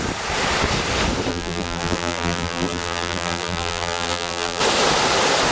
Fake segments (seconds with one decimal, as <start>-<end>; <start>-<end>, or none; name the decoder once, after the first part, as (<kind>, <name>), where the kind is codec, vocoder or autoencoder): 1.3-4.6 (vocoder, BigVGAN v2)